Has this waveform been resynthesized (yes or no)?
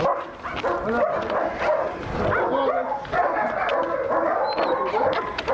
no